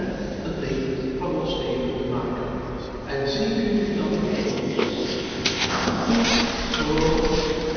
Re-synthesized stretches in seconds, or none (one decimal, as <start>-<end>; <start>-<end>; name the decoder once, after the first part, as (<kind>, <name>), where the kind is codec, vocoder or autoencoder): 4.5-6.1 (codec, ZipCodec)